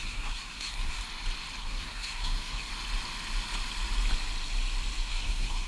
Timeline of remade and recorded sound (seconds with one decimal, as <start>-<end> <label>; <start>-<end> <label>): 0.0-1.0 remade; 1.0-1.6 recorded; 1.6-2.7 remade; 2.7-5.1 recorded; 5.1-5.7 remade